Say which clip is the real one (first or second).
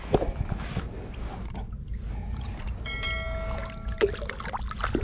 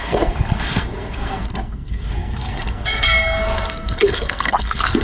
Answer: first